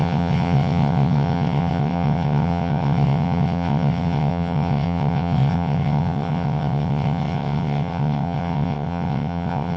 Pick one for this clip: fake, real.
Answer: fake